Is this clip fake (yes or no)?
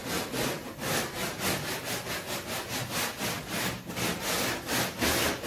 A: no